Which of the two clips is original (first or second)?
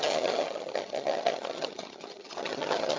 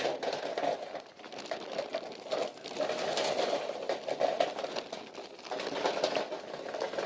second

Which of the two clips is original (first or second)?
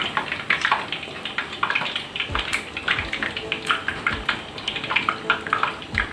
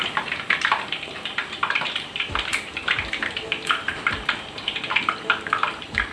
first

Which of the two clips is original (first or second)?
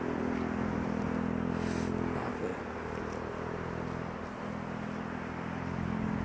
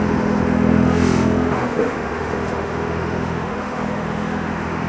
first